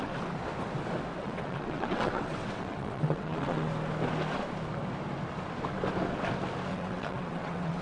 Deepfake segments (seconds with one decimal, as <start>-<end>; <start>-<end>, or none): 1.2-3.7; 6.7-7.8